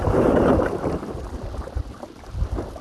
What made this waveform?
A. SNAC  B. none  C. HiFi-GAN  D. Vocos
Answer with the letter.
B